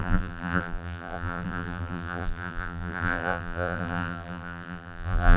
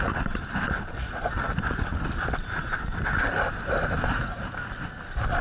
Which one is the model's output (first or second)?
first